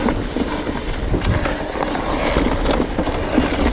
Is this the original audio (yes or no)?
yes